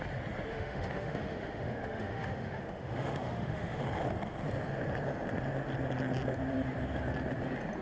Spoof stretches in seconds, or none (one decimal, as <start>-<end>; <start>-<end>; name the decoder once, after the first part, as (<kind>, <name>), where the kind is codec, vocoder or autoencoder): 0.5-3.8 (autoencoder, DAC-VAE)